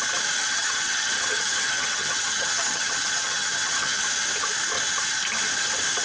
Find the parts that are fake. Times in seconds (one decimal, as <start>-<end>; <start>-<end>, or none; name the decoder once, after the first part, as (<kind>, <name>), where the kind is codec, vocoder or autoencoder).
0.4-4.0 (vocoder, HiFi-GAN)